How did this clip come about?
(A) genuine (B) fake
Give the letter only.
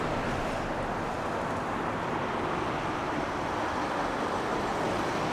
A